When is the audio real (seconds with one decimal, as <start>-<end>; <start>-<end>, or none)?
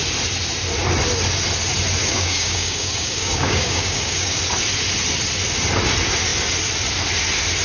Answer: 0.0-2.0; 4.4-7.6